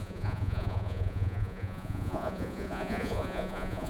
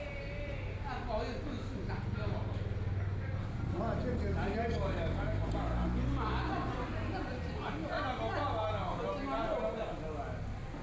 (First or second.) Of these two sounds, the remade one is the first